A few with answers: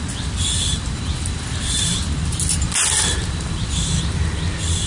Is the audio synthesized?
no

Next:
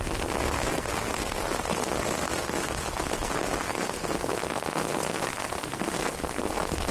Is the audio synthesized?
yes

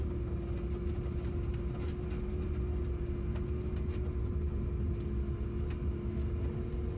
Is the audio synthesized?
no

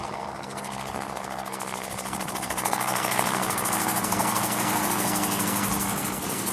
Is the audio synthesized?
yes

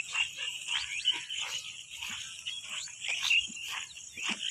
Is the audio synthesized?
no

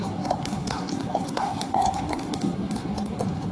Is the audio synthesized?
yes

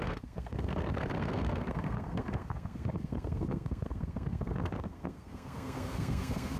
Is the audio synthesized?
yes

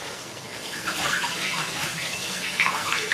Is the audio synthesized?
yes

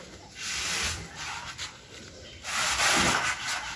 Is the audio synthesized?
no